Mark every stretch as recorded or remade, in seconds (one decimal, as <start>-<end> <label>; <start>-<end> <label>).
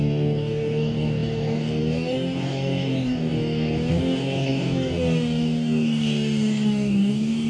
0.0-7.5 remade